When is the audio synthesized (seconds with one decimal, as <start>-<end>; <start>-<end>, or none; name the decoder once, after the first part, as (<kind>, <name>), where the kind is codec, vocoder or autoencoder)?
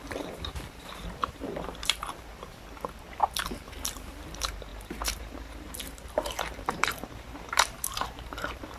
0.0-2.5 (vocoder, BigVGAN v2); 4.3-8.8